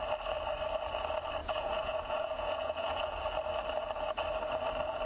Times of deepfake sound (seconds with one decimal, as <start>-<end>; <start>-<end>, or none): 1.4-3.2